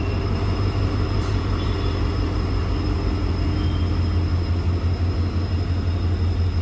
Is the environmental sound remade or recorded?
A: recorded